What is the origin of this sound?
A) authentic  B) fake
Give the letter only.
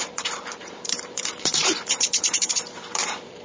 B